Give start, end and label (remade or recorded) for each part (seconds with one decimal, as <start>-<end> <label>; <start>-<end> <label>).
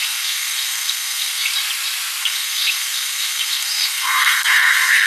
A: 0.0-1.5 remade; 1.5-2.2 recorded; 2.2-5.1 remade